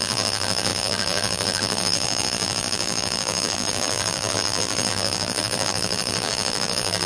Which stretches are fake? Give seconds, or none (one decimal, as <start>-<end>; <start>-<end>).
0.0-7.1